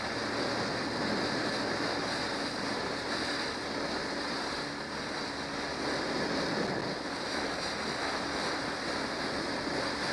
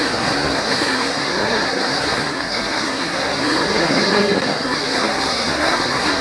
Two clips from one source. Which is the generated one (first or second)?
second